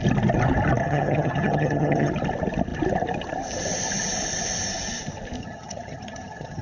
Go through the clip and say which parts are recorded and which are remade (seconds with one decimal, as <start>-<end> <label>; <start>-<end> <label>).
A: 0.0-0.8 recorded; 0.8-2.1 remade; 2.1-5.4 recorded; 5.4-6.6 remade